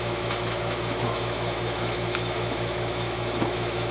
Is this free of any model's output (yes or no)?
no